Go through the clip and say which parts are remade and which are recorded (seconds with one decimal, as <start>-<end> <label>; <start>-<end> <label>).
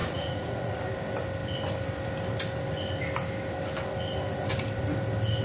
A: 0.0-0.8 remade; 0.8-5.4 recorded